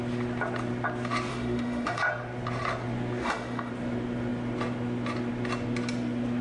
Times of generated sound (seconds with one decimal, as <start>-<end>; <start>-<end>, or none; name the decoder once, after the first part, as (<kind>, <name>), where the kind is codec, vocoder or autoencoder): 1.3-2.0 (autoencoder, DAC-VAE); 3.2-3.7